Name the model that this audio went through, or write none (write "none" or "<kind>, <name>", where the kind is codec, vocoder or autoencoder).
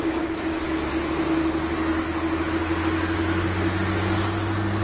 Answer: none